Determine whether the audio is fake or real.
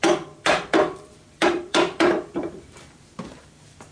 fake